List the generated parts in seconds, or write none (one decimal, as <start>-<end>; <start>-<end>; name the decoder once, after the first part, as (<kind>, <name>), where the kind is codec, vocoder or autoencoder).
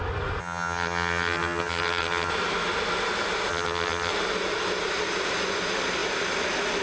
0.4-2.3 (vocoder, HiFi-GAN); 3.5-4.1